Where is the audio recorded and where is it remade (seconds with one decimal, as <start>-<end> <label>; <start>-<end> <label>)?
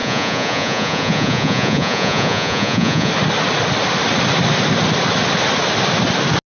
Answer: 0.0-3.1 remade; 3.1-6.5 recorded